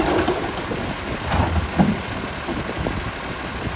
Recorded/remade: recorded